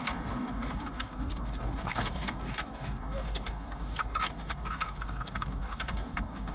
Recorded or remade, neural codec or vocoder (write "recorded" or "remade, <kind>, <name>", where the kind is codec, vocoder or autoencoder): remade, codec, DAC